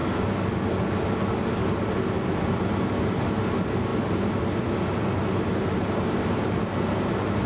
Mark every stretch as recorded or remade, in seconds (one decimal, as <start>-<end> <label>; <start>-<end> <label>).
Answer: 0.0-7.5 recorded